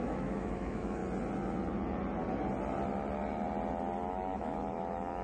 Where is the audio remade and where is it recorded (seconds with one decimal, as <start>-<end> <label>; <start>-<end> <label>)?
0.0-1.0 remade; 1.0-4.1 recorded; 4.1-5.2 remade